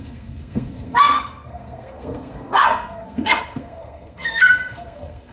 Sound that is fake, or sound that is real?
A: fake